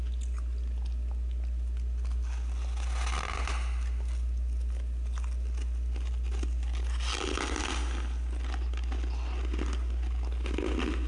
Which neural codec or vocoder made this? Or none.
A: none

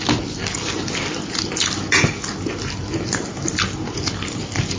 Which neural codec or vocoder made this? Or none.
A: none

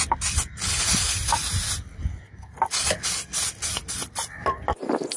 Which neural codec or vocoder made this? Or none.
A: none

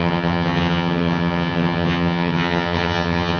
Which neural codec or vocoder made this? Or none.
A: vocoder, HiFi-GAN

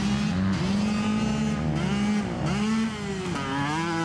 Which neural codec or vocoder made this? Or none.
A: none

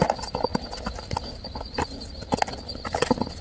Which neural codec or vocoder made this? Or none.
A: none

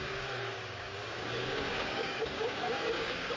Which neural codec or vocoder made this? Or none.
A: codec, DAC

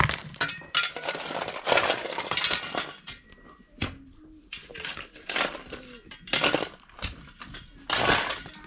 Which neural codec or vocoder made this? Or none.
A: none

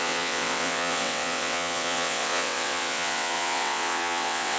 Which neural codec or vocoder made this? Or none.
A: vocoder, WaveNeXt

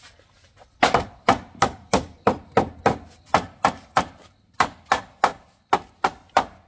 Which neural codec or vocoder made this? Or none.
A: none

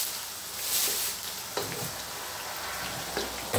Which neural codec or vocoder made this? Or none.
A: none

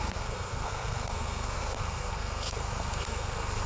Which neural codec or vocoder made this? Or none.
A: codec, SNAC